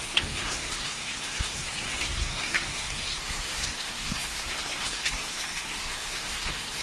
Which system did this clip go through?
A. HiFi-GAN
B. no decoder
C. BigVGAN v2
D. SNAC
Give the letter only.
D